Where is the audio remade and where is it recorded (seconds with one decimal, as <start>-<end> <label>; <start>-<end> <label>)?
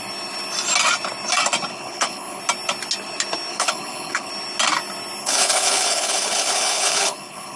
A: 0.0-1.7 recorded; 1.7-2.4 remade; 2.4-3.5 recorded; 3.5-4.3 remade; 4.3-5.2 recorded; 5.2-7.6 remade